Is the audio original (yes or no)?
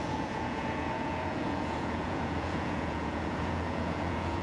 no